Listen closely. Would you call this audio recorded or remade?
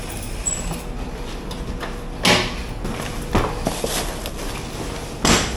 recorded